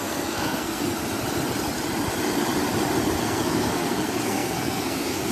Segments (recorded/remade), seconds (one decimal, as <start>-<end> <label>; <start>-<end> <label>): 0.0-0.8 remade; 0.8-3.2 recorded; 3.2-5.3 remade